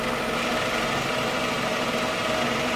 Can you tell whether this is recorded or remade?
recorded